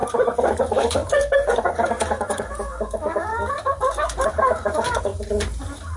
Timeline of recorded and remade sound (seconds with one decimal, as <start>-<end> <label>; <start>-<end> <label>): 0.0-0.6 recorded; 0.6-3.3 remade; 3.3-4.3 recorded; 4.3-5.1 remade; 5.1-6.0 recorded